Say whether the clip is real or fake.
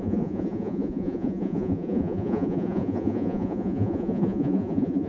fake